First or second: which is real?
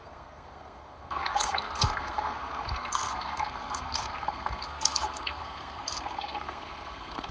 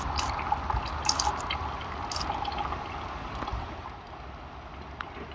second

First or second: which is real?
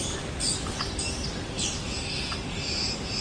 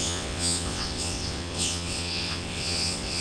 first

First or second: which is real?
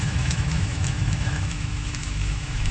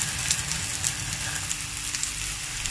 second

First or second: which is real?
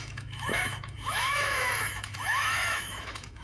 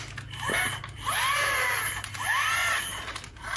second